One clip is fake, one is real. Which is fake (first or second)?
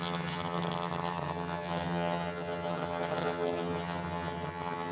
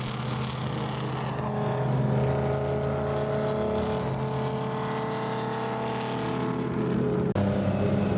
first